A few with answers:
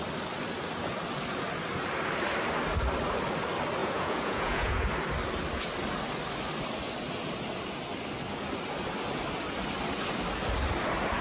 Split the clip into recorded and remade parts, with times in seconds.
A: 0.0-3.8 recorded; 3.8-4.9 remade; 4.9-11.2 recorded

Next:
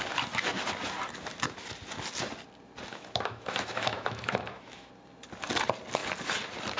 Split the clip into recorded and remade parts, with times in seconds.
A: 0.0-2.9 recorded; 2.9-4.9 remade; 4.9-6.8 recorded

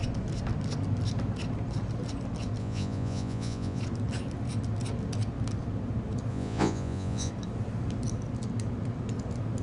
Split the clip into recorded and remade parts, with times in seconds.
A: 0.0-2.6 recorded; 2.6-3.8 remade; 3.8-6.3 recorded; 6.3-7.3 remade; 7.3-9.6 recorded

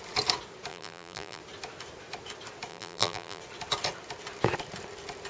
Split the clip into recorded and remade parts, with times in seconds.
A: 0.0-0.7 recorded; 0.7-1.4 remade; 1.4-2.7 recorded; 2.7-3.4 remade; 3.4-5.3 recorded

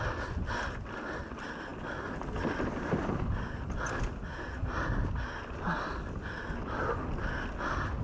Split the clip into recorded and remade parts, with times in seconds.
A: 0.0-8.0 recorded

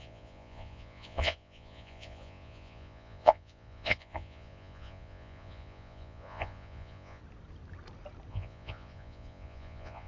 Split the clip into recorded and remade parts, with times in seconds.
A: 0.0-7.2 remade; 7.2-8.3 recorded; 8.3-10.1 remade

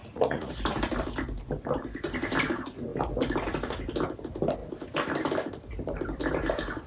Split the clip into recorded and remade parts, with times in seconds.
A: 0.0-0.5 remade; 0.5-6.9 recorded

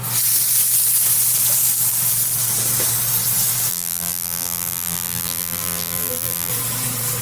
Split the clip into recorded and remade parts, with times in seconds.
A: 0.0-3.7 recorded; 3.7-6.5 remade; 6.5-7.2 recorded